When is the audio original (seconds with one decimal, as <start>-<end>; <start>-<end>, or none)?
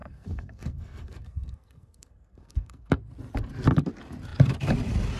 3.1-5.2